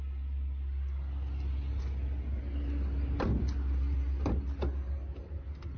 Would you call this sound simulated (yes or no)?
no